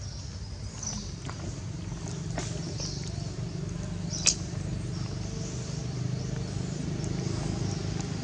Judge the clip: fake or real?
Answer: real